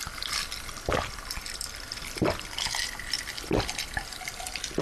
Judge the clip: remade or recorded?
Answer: remade